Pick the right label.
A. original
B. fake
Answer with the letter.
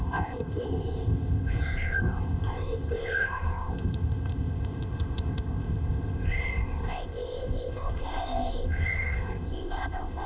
B